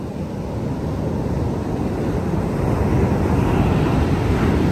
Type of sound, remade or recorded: recorded